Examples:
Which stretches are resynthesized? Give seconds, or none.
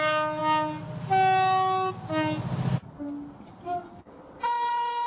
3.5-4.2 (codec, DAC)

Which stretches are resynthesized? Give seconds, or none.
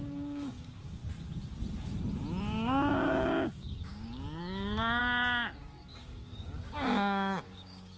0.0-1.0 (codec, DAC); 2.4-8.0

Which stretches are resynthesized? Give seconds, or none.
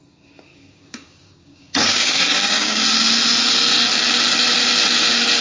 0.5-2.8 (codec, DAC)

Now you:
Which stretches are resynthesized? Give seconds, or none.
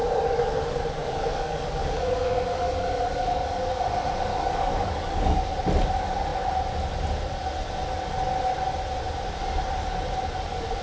0.0-3.8 (codec, DAC); 4.3-5.5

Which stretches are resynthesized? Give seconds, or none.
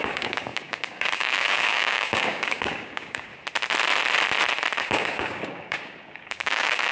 0.0-3.3 (codec, DAC); 4.8-6.9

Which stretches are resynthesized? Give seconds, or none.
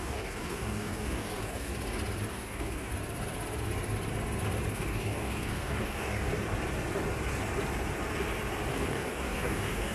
0.0-1.7 (codec, DAC); 2.3-2.9; 4.7-6.3; 8.7-9.9